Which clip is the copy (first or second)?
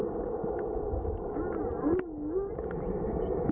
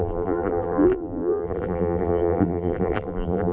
second